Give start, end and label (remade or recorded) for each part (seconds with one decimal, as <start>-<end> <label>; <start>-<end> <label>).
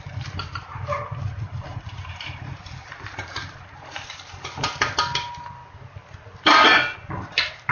0.0-0.7 recorded; 0.7-4.2 remade; 4.2-7.7 recorded